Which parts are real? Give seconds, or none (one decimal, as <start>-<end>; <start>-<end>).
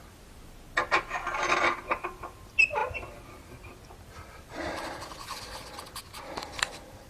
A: 0.0-7.1